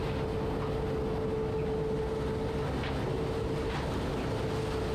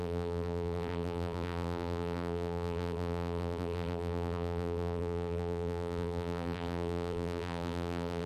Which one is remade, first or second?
second